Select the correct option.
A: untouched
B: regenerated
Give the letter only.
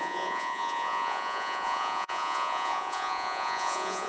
B